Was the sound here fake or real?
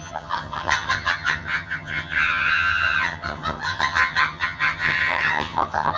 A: fake